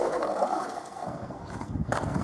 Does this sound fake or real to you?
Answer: fake